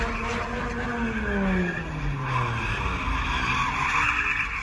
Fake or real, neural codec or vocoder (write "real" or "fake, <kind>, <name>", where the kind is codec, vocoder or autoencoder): real